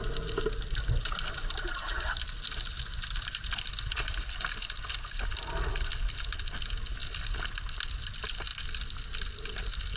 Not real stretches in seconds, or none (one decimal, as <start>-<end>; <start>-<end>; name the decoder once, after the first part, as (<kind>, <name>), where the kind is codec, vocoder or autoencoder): none